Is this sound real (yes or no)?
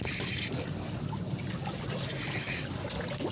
yes